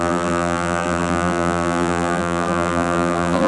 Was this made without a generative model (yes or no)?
no